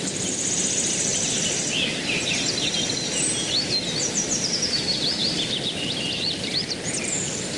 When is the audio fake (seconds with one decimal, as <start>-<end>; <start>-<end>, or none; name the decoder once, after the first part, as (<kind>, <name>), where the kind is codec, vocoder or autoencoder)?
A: 0.0-1.1 (vocoder, BigVGAN v2); 4.0-7.6